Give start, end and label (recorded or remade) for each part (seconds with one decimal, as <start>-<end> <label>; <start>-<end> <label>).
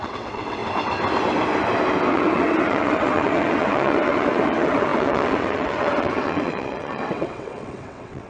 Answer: 0.0-0.6 remade; 0.6-2.1 recorded; 2.1-8.3 remade